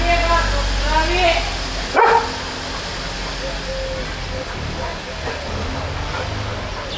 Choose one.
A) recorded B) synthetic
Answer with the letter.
A